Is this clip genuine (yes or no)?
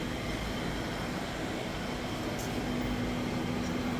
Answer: yes